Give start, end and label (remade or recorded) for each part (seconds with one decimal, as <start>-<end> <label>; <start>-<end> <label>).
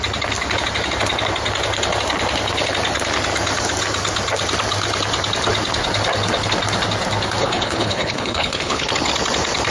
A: 0.0-7.4 recorded; 7.4-8.9 remade; 8.9-9.7 recorded